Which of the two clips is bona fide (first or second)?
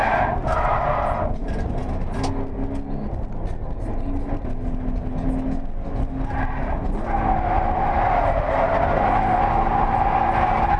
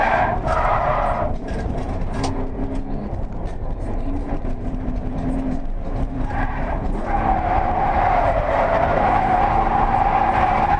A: first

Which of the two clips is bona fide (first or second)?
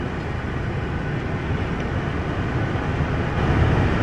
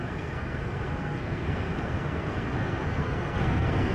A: first